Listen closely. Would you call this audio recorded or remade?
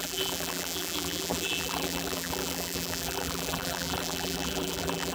remade